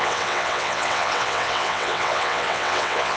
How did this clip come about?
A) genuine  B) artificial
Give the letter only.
B